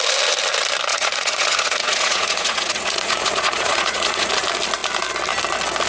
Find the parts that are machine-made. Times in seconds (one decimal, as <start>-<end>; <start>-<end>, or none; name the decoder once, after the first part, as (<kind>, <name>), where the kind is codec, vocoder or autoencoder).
0.9-4.3 (vocoder, Vocos)